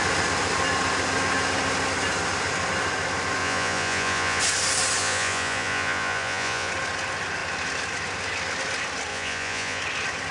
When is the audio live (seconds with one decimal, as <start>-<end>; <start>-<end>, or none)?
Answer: 0.0-3.4; 4.4-5.0; 6.7-9.1; 9.8-10.3